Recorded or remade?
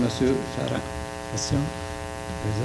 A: recorded